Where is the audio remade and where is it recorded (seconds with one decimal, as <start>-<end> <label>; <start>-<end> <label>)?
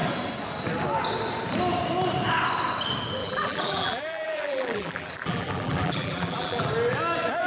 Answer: 0.0-3.2 recorded; 3.2-6.7 remade; 6.7-7.5 recorded